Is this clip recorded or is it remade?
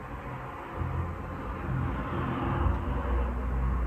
recorded